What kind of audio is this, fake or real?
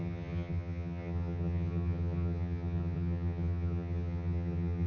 fake